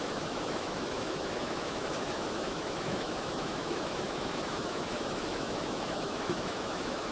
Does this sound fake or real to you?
fake